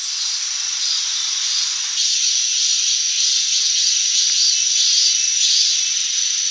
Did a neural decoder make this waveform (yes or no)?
no